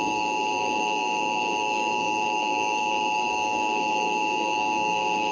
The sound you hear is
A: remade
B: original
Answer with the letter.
A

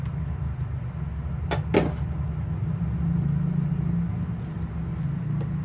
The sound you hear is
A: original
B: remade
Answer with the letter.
A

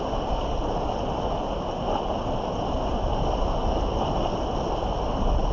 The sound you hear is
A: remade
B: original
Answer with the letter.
B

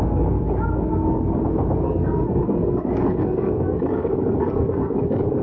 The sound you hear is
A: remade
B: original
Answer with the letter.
A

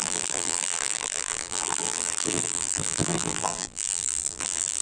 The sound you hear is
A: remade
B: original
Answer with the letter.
A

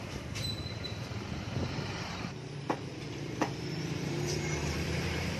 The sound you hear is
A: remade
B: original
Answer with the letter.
A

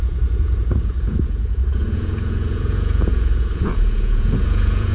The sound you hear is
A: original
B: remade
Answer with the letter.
B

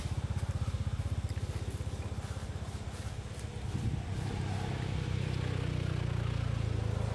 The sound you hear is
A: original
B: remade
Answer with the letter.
A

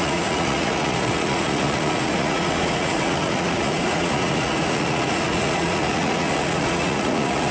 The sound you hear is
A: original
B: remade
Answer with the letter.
B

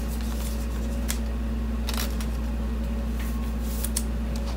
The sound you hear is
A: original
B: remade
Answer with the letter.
A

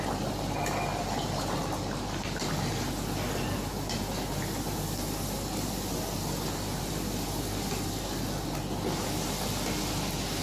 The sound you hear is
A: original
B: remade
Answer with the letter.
A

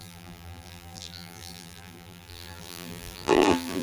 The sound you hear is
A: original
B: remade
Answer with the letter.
B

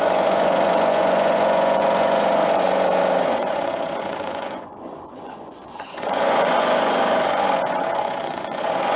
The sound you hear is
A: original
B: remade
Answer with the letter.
B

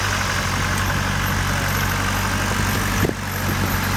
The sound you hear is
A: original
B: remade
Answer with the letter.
A